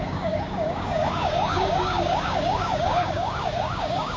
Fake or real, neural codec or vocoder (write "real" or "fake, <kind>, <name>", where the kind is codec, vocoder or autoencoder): fake, codec, DAC